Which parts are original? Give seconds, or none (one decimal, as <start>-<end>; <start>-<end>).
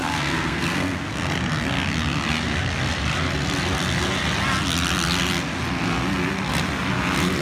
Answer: 1.1-7.4